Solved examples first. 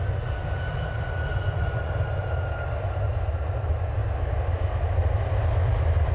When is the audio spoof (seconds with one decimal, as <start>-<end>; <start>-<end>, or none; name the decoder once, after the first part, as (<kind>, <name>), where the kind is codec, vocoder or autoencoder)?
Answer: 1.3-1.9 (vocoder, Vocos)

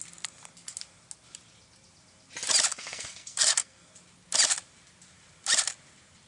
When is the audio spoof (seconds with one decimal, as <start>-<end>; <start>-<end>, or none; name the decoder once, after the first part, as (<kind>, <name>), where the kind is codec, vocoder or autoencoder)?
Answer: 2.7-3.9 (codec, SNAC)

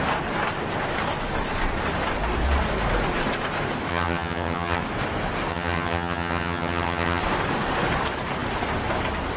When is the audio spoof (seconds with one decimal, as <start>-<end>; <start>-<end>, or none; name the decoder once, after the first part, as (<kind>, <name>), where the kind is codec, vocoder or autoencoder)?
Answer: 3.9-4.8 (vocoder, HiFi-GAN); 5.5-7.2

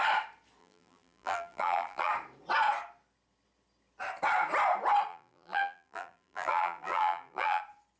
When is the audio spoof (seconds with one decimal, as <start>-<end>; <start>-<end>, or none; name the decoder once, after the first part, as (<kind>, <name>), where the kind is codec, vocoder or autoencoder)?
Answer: 0.6-2.1 (vocoder, BigVGAN v2); 5.1-7.6

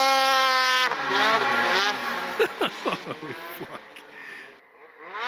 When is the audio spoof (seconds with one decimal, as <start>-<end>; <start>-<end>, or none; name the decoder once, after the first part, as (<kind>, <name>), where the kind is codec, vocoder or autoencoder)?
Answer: 0.9-1.5 (vocoder, BigVGAN v2); 2.0-3.0